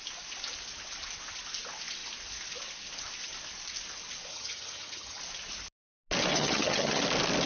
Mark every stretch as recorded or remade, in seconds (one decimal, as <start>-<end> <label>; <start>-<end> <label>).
0.0-4.3 recorded; 4.3-5.2 remade; 5.2-6.3 recorded; 6.3-7.0 remade; 7.0-7.5 recorded